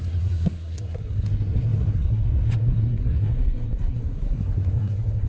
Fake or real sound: fake